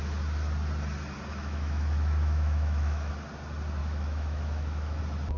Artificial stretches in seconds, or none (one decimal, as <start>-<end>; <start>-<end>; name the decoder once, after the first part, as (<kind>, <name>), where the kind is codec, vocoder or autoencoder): 1.3-3.1 (autoencoder, DAC-VAE); 3.8-5.0